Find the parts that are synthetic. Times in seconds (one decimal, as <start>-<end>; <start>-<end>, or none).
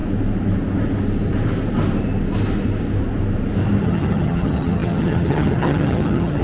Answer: 3.8-6.4